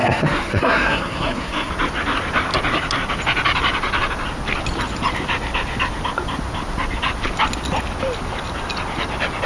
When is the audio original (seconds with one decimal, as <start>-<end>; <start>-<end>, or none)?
1.7-9.5